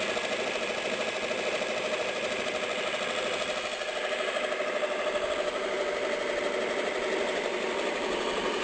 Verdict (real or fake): real